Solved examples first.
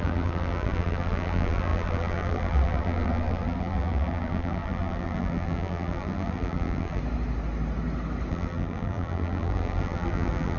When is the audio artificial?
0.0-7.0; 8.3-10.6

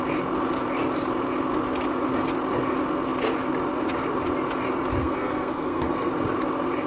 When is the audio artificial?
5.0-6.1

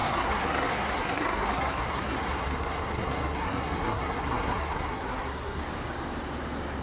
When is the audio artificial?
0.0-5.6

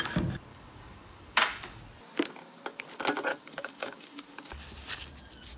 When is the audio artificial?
0.5-1.8; 3.3-4.5

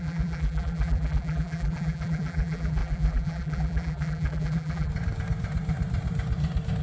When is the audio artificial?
0.0-4.9

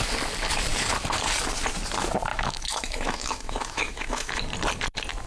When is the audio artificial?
2.3-4.4